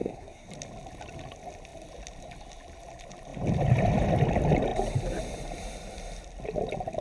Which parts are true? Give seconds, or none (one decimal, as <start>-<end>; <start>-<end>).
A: 0.5-7.0

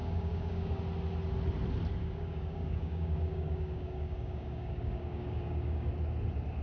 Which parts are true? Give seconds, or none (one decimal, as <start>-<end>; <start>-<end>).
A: 0.8-2.0; 5.9-6.6

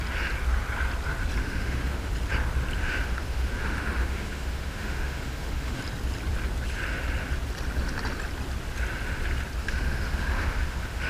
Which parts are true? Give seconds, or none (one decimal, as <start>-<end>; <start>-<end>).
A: 0.0-1.4; 2.1-2.8; 5.8-9.6

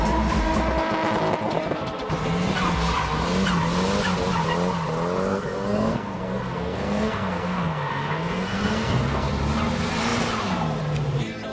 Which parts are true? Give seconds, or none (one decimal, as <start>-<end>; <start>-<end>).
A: 0.0-5.3; 9.3-11.5

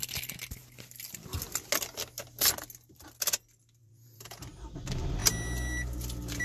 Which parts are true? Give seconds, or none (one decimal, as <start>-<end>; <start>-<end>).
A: 0.0-3.8; 4.4-6.4

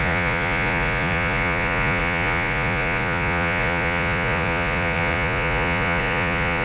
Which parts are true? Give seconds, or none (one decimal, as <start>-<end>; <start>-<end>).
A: none

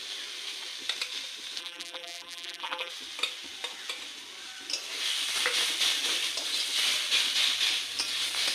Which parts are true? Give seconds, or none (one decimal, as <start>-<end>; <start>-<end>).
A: 0.0-1.6; 2.9-8.5

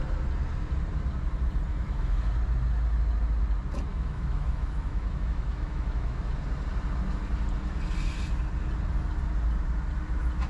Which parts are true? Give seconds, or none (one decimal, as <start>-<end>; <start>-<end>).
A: 0.0-1.7; 2.3-3.9; 6.2-10.5